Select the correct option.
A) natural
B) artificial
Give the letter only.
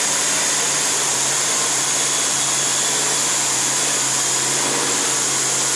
A